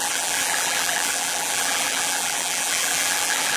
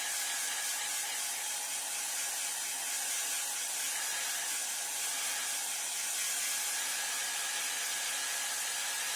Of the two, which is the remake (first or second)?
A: first